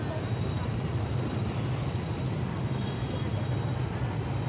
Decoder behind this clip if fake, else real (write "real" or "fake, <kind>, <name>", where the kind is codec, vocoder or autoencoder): real